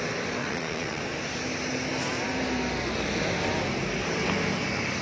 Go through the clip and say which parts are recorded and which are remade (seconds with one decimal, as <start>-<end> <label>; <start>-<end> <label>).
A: 0.0-0.4 recorded; 0.4-1.0 remade; 1.0-5.0 recorded